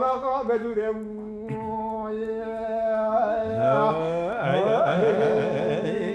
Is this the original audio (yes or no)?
no